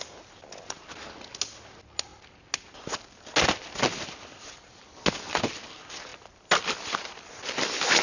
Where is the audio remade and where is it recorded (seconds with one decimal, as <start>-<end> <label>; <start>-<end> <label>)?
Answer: 0.0-8.0 recorded